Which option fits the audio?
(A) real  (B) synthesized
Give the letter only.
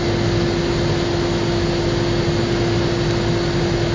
A